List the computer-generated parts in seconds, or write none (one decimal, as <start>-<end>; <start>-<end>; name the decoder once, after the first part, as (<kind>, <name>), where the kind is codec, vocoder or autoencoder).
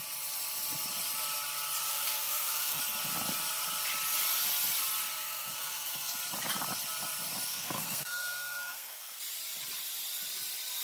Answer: 1.9-2.8 (codec, SNAC); 5.2-6.1; 7.5-9.2